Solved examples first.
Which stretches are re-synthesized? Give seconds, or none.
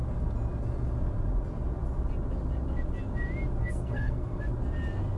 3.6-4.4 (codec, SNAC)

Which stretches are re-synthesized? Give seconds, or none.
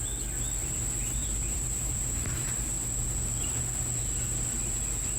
1.2-2.5 (vocoder, BigVGAN v2)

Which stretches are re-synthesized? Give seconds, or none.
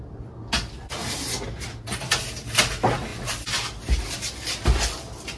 none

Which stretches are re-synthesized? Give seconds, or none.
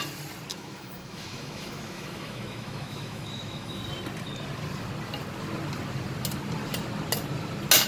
0.5-3.8 (autoencoder, DAC-VAE)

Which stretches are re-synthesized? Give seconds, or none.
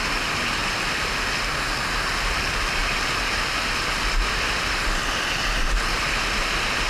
none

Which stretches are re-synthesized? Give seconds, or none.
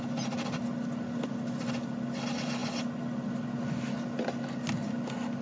none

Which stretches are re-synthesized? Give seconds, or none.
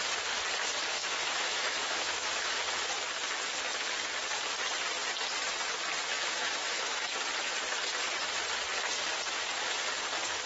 1.0-2.5 (autoencoder, DAC-VAE); 6.1-7.1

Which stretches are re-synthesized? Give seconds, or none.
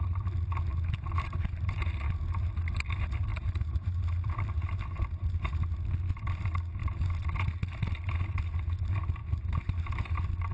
0.7-1.9 (vocoder, BigVGAN v2); 3.3-5.6; 9.2-9.8